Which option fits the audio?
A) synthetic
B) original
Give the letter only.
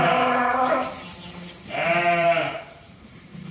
A